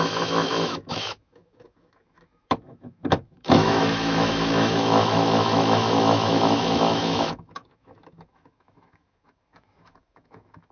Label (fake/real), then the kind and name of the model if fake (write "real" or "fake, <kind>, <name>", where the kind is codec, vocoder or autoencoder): fake, autoencoder, DAC-VAE